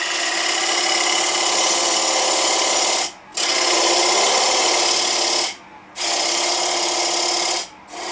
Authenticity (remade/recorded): recorded